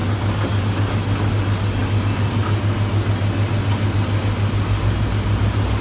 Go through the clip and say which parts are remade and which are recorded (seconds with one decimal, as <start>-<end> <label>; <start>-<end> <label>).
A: 0.0-5.8 recorded